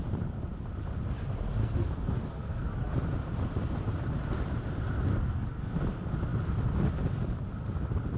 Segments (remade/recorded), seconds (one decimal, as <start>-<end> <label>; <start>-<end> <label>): 0.0-1.6 recorded; 1.6-2.9 remade; 2.9-5.1 recorded; 5.1-5.8 remade; 5.8-8.2 recorded